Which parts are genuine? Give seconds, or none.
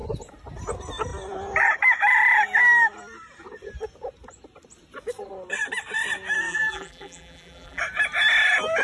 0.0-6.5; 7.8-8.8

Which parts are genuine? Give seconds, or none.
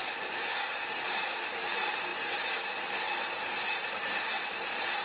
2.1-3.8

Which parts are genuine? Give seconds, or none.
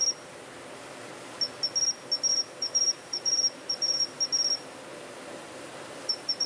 0.0-2.3; 4.2-4.9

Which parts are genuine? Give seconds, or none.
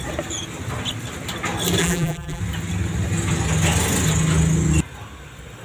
0.0-1.8; 2.4-5.6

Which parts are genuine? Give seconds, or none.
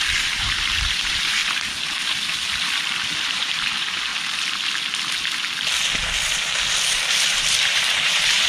1.4-3.2; 4.1-6.9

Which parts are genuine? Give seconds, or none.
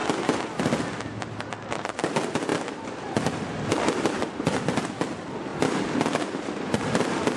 0.6-2.5; 3.2-7.4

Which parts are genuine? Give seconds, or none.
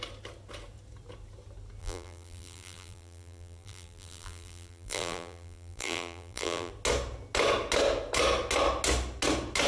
0.0-1.8; 6.7-9.7